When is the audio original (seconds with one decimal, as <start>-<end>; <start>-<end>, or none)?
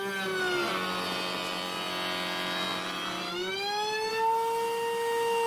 0.0-5.5